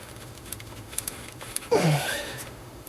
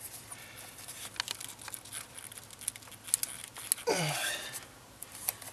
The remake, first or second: first